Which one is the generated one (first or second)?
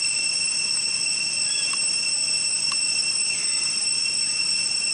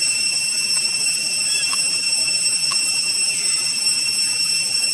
second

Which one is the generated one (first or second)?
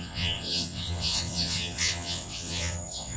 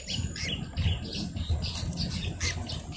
first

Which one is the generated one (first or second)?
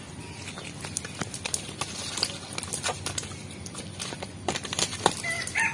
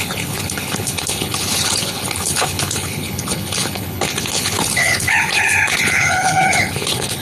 second